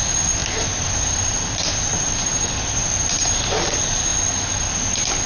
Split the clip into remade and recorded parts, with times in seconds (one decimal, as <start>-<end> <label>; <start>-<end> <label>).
0.0-0.4 recorded; 0.4-3.6 remade; 3.6-5.3 recorded